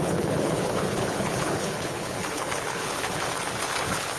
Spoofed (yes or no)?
yes